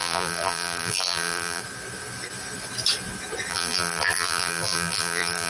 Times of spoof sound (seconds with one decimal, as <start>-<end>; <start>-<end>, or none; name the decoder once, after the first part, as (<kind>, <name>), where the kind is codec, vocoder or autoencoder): 0.0-1.6 (vocoder, BigVGAN v2); 3.5-5.5